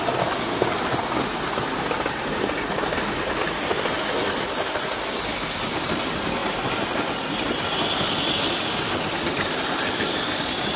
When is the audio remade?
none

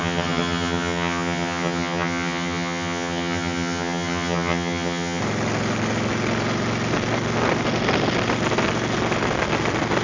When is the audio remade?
0.0-5.2

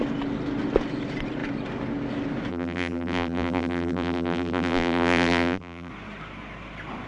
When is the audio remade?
2.5-5.9